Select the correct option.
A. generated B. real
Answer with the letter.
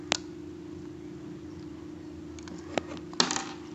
B